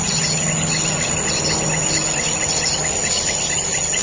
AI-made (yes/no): no